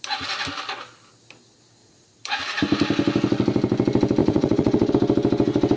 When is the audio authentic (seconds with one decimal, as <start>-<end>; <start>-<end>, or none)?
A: 0.0-1.8; 2.4-4.2; 4.9-5.8